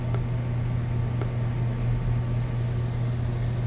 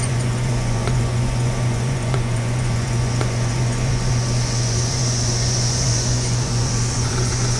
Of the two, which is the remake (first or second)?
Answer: second